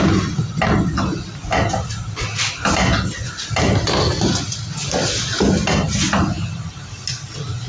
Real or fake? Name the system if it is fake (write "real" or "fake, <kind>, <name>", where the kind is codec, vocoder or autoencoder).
real